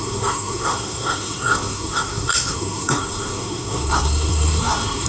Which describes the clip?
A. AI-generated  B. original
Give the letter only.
A